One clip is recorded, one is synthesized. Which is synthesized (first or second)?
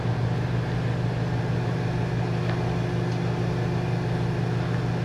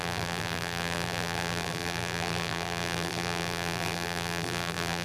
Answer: second